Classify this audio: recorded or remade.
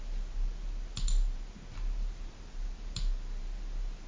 recorded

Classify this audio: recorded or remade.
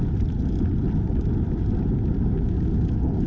recorded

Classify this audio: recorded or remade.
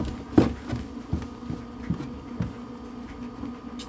recorded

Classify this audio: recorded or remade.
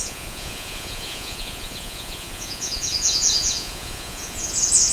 remade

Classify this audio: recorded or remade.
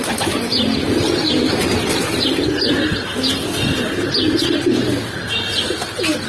recorded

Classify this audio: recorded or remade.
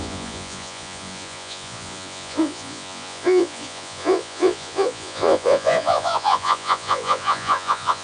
remade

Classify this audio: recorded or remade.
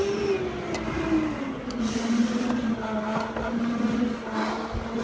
recorded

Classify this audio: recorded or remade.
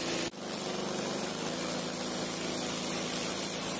recorded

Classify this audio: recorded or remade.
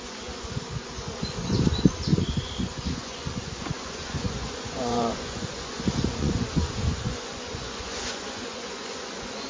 remade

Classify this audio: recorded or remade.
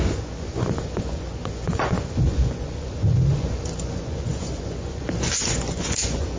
remade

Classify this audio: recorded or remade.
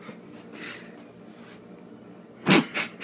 recorded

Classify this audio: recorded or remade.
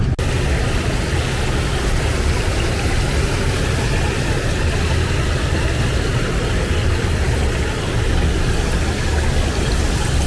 recorded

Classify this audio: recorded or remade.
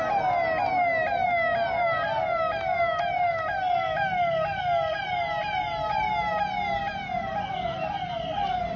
recorded